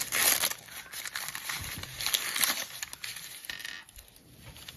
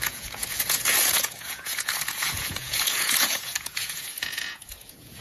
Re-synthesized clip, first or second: second